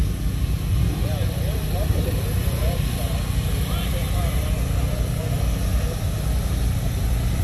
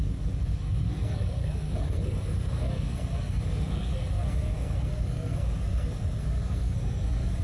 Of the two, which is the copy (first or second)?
second